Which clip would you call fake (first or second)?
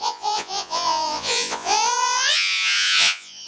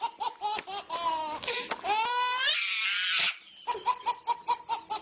first